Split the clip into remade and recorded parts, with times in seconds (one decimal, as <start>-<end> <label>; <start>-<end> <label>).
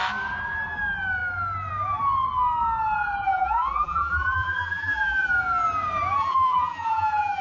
0.0-3.2 recorded; 3.2-5.3 remade; 5.3-6.2 recorded; 6.2-7.4 remade